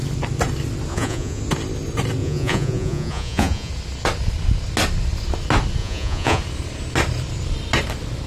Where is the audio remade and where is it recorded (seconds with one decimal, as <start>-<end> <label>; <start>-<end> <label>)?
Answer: 0.0-0.9 recorded; 0.9-1.4 remade; 1.4-2.2 recorded; 2.2-3.7 remade; 3.7-5.8 recorded; 5.8-6.4 remade; 6.4-8.3 recorded